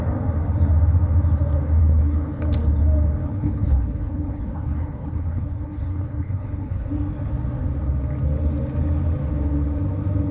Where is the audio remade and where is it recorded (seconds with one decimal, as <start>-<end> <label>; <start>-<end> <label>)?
0.0-1.8 recorded; 1.8-2.4 remade; 2.4-3.2 recorded; 3.2-6.9 remade; 6.9-10.3 recorded

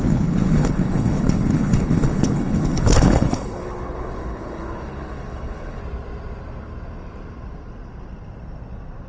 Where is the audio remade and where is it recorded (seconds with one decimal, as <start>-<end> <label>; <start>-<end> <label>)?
0.0-5.8 remade; 5.8-9.1 recorded